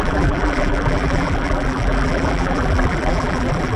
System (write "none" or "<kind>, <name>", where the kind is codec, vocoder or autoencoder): vocoder, BigVGAN v2